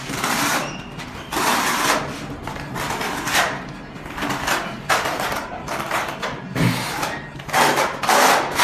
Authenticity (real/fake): real